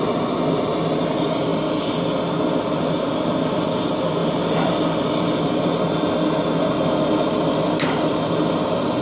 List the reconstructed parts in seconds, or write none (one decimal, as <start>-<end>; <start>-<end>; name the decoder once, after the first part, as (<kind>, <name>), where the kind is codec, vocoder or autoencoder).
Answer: none